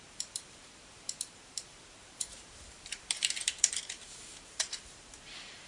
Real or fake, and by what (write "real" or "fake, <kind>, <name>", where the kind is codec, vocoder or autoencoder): fake, vocoder, BigVGAN v2